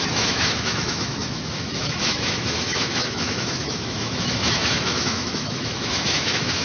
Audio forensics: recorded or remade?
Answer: remade